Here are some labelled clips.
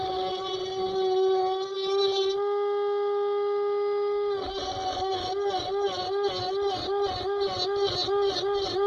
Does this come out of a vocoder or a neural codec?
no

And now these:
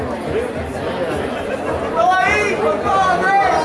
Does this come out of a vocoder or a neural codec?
no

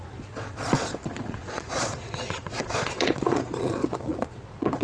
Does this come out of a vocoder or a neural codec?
yes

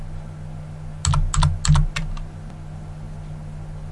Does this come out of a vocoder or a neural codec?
no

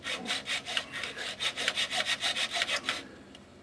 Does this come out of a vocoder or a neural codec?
no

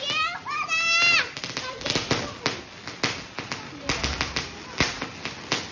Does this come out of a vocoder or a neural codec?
no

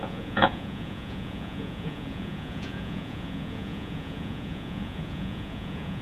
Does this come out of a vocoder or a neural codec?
yes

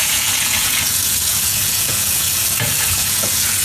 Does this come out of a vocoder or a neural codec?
yes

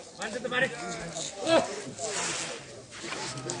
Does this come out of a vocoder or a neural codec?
no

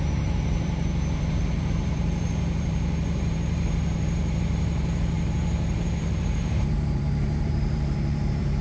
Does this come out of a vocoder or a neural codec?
yes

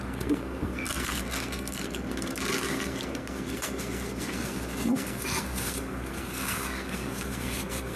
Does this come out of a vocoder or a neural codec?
yes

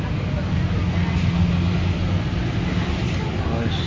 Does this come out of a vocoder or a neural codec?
no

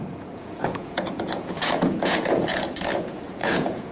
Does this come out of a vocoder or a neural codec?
yes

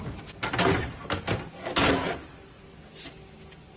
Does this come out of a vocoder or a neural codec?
no